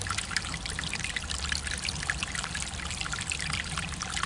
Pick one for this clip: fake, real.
fake